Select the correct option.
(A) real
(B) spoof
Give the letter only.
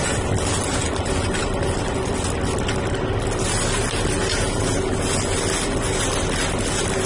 A